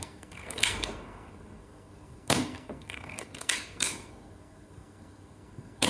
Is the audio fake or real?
fake